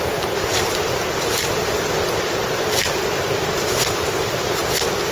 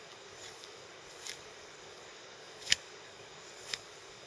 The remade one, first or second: second